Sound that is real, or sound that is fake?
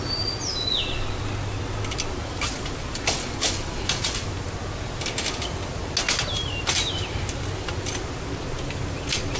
real